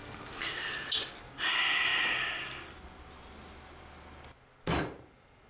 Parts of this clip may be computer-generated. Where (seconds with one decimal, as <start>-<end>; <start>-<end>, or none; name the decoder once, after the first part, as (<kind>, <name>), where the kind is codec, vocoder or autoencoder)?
none